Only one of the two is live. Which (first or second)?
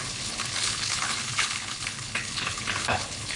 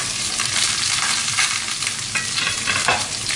second